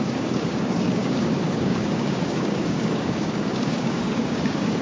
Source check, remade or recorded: remade